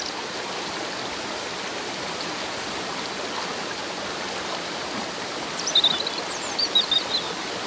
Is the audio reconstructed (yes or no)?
no